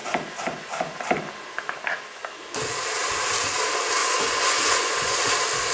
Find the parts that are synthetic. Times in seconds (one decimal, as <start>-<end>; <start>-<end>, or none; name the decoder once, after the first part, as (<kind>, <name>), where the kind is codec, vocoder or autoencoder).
4.0-5.3 (vocoder, Vocos)